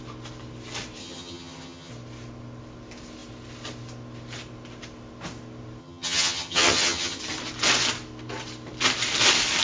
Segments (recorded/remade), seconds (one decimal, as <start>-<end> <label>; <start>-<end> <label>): 0.0-1.0 recorded; 1.0-1.9 remade; 1.9-5.8 recorded; 5.8-7.2 remade; 7.2-9.6 recorded